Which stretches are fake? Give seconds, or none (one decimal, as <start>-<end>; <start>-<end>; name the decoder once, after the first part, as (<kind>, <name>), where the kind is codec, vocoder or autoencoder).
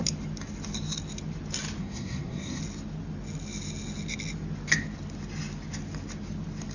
1.8-2.6 (codec, SNAC)